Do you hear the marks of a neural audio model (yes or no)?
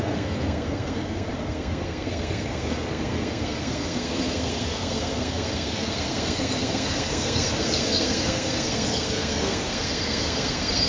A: yes